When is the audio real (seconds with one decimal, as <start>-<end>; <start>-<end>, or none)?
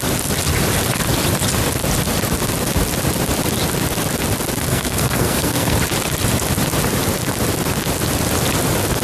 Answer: 0.0-4.7; 5.8-9.0